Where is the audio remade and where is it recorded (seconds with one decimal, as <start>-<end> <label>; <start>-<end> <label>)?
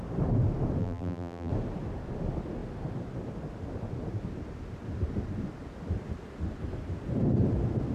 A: 0.0-0.8 recorded; 0.8-1.5 remade; 1.5-7.9 recorded